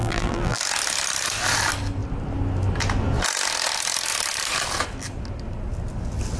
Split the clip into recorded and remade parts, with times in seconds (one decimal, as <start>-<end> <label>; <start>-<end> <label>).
0.0-0.6 remade; 0.6-6.4 recorded